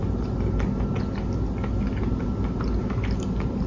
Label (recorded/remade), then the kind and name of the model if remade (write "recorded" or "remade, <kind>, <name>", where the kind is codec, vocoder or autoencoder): recorded